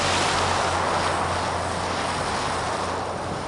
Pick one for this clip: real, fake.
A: real